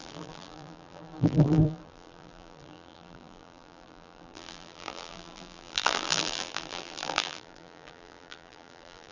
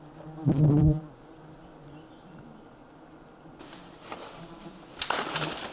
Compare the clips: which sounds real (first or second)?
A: second